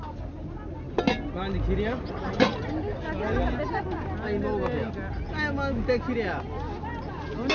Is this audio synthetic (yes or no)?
no